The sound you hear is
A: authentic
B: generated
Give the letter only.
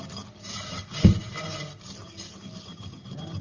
A